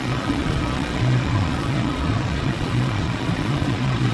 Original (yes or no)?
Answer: no